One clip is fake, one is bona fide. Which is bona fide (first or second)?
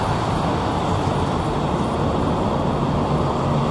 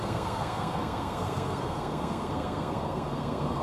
first